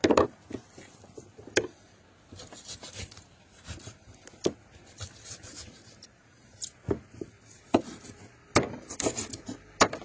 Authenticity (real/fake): real